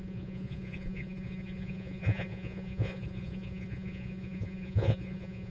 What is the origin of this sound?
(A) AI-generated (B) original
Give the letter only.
A